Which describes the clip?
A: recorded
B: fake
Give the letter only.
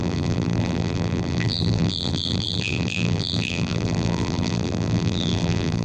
B